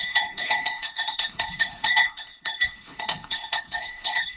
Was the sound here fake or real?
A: fake